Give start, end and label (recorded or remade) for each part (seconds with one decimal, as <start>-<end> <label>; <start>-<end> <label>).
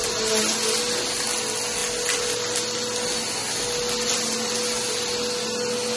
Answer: 0.0-6.0 recorded